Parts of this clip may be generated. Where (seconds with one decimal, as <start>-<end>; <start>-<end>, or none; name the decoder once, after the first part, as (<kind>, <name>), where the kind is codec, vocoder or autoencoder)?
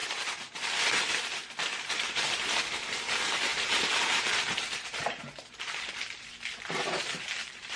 0.0-7.8 (vocoder, BigVGAN v2)